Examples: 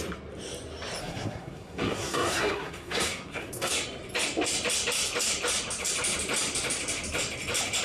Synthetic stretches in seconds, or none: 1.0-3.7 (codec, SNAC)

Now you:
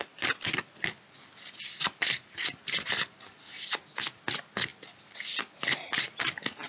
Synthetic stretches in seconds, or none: none

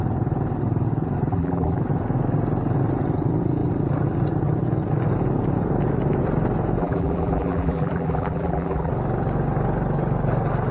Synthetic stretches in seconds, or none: 1.3-1.8 (vocoder, BigVGAN v2); 6.8-8.9

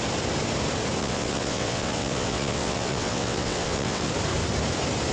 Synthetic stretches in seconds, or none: 1.0-4.1 (vocoder, WaveNeXt)

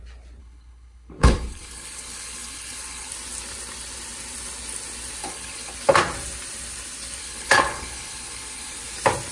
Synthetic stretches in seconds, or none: 0.4-3.1 (codec, HILCodec); 5.2-5.7; 7.2-8.8

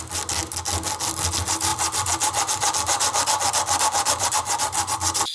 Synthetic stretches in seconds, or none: none

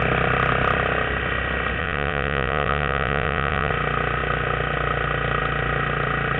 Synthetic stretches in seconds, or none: 1.8-3.7 (vocoder, WaveNeXt)